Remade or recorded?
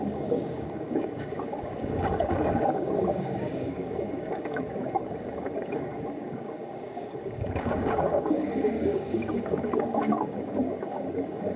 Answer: remade